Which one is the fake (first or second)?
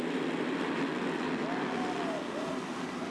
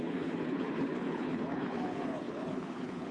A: second